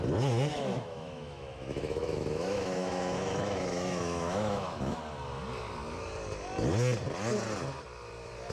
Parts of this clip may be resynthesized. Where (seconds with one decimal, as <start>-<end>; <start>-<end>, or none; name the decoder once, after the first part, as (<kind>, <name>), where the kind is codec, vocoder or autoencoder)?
0.5-5.0 (autoencoder, DAC-VAE)